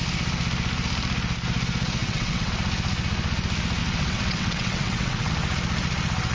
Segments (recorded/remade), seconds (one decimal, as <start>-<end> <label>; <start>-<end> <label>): 0.0-2.0 recorded; 2.0-2.5 remade; 2.5-3.8 recorded; 3.8-5.3 remade; 5.3-6.3 recorded